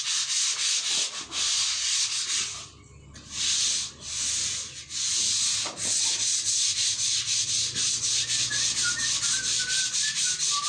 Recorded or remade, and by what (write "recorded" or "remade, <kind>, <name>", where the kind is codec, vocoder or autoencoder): recorded